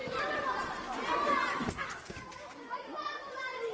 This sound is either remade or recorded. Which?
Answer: remade